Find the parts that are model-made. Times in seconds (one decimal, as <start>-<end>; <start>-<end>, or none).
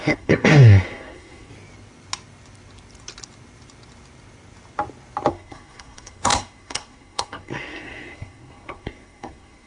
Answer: 0.0-1.5; 5.3-9.7